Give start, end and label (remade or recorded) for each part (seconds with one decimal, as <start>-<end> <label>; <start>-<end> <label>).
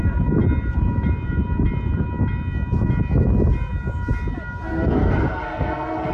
0.0-4.7 recorded; 4.7-6.1 remade